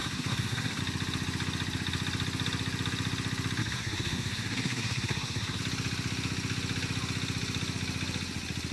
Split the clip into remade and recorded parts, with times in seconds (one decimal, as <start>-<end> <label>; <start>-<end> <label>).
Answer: 0.0-0.8 remade; 0.8-3.6 recorded; 3.6-5.6 remade; 5.6-8.7 recorded